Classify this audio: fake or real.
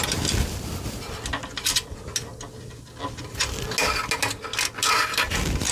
real